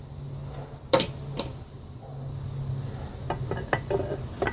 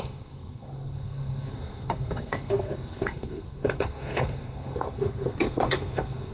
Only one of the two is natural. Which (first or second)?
first